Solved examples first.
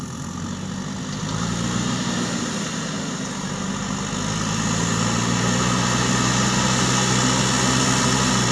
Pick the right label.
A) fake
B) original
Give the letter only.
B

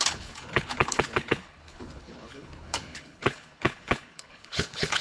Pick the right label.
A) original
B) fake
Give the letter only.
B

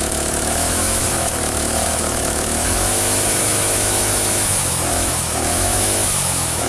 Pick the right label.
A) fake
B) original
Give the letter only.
A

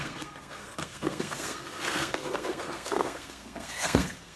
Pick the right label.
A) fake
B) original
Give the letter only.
A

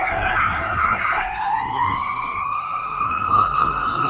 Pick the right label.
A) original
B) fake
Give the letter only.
B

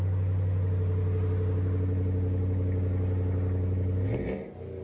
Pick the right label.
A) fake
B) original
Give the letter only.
B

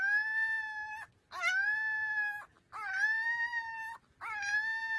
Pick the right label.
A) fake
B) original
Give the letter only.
B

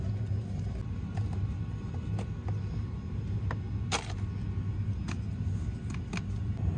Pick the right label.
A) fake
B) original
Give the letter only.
B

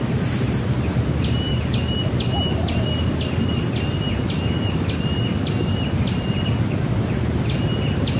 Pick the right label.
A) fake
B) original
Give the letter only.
B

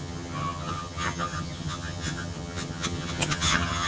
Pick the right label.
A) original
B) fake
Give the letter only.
B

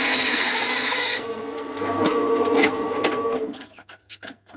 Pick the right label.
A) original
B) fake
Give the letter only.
B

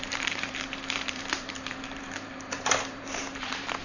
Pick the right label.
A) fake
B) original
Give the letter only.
A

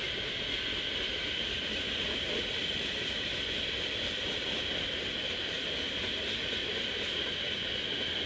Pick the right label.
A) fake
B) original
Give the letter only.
B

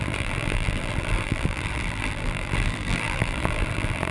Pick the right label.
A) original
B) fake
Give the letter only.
B